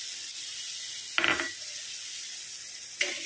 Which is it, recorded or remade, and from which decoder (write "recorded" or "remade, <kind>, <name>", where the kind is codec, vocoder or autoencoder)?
recorded